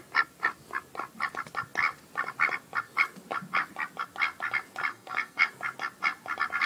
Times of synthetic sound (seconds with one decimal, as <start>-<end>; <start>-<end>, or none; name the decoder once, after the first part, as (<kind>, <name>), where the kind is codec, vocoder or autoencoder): 4.9-5.5 (codec, SNAC)